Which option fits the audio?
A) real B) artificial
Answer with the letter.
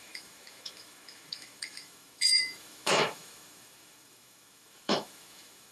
B